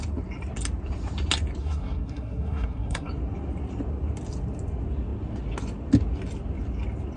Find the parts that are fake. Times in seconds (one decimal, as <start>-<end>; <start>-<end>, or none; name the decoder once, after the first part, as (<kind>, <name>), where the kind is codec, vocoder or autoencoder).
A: 1.6-3.1 (codec, SNAC)